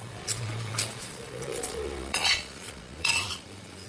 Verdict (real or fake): fake